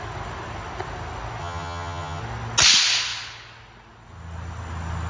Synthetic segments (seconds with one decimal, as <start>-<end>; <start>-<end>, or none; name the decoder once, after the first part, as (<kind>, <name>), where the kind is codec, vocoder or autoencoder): 1.4-2.2 (vocoder, HiFi-GAN)